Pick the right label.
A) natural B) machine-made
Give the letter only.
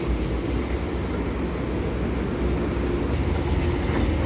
A